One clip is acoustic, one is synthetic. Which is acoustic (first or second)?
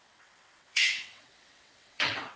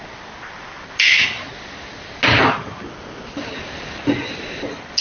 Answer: second